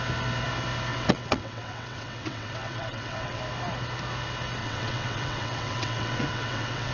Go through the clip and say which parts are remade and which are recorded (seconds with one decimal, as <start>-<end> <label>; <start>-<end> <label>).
0.0-0.9 recorded; 0.9-3.4 remade; 3.4-4.6 recorded; 4.6-6.9 remade